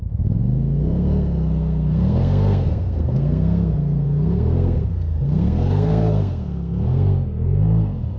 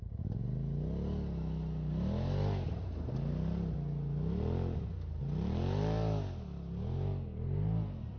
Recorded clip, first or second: second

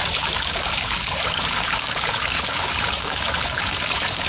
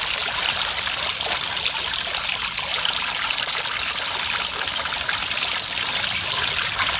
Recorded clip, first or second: second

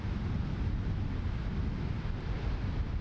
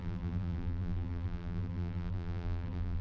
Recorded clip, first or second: first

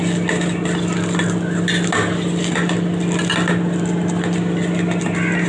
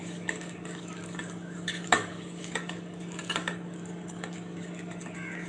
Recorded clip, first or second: first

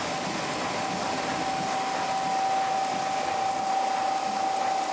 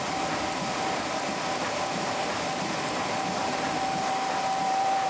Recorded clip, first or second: first